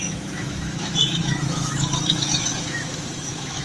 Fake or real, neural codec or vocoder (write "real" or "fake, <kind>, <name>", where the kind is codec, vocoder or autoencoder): fake, autoencoder, DAC-VAE